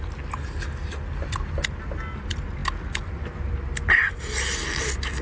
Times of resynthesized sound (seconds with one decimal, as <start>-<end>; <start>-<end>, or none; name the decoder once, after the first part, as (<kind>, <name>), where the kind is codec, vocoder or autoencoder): none